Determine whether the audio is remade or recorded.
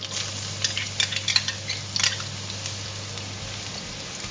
recorded